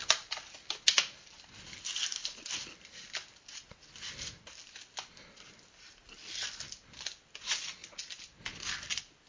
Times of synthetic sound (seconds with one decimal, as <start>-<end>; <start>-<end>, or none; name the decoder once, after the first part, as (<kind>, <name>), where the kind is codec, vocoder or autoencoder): none